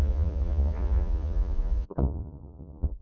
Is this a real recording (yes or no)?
no